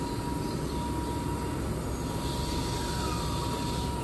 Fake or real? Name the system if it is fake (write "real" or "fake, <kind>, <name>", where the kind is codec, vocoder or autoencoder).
real